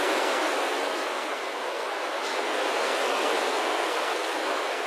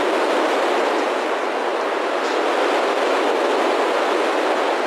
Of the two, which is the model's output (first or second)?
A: first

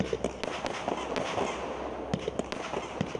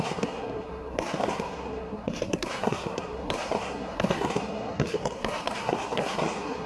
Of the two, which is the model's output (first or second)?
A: second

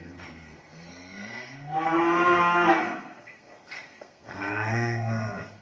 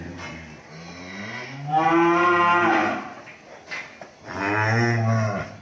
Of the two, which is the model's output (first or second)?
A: first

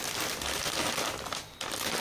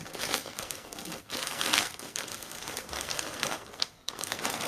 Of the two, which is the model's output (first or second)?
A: second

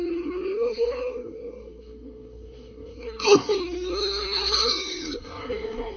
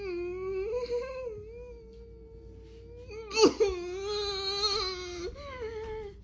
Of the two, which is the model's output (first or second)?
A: first